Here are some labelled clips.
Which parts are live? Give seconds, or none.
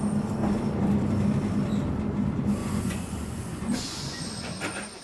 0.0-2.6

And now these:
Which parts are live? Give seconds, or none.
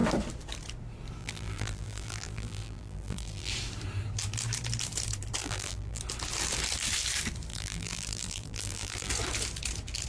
0.0-1.2; 3.5-5.4; 6.0-7.5; 9.1-10.1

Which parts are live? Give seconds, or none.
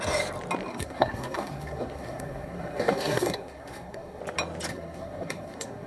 0.0-0.7; 4.2-4.7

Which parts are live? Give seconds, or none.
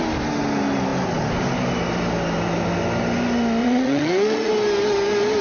0.0-3.6; 4.5-5.4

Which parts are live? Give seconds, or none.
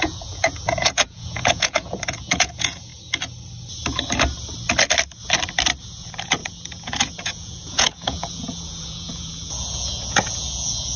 2.9-5.8